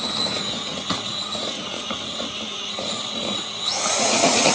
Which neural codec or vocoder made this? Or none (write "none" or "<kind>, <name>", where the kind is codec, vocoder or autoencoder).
vocoder, Vocos